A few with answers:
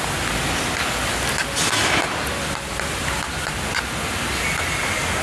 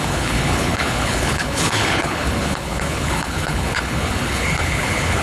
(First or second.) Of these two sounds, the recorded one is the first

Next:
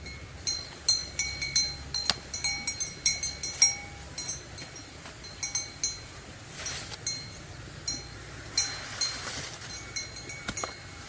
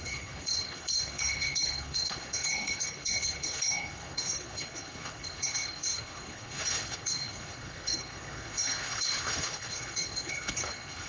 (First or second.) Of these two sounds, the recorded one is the first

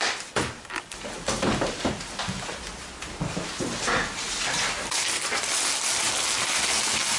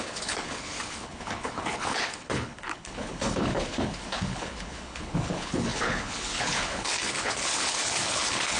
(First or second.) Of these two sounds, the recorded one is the first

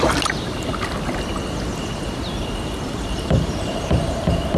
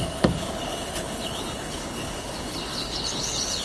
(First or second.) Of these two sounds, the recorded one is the first